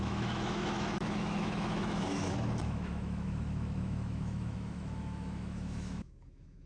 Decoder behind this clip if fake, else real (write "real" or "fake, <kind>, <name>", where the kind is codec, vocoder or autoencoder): fake, autoencoder, DAC-VAE